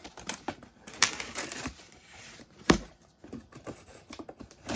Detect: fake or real fake